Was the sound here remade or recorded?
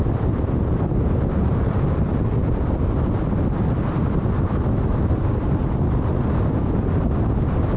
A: recorded